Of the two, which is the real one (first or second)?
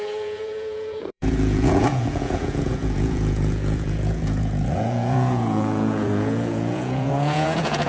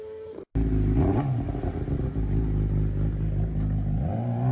second